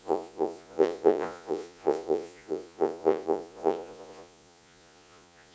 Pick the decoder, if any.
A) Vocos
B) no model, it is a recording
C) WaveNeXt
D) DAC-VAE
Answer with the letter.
A